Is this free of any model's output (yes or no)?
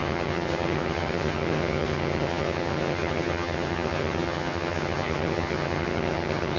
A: no